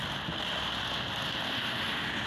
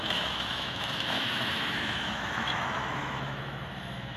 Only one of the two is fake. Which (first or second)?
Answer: second